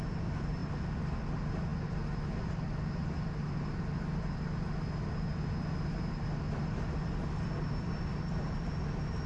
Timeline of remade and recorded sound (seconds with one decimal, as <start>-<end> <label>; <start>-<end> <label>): 0.0-9.3 recorded